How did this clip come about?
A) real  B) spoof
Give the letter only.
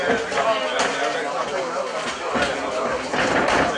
A